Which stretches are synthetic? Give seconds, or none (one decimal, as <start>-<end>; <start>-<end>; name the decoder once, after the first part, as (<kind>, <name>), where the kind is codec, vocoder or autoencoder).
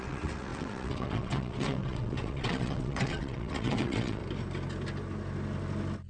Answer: 0.0-4.2 (vocoder, WaveNeXt)